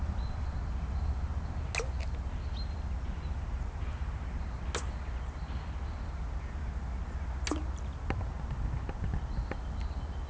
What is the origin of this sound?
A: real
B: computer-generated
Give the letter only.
A